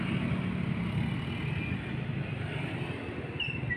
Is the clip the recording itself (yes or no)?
yes